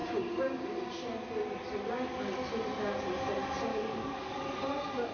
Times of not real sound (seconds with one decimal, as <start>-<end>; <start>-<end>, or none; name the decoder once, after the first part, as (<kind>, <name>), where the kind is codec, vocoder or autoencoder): 3.7-4.6 (codec, DAC)